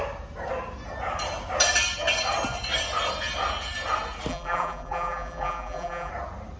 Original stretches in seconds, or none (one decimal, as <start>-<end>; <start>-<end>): 0.0-4.3; 6.1-6.6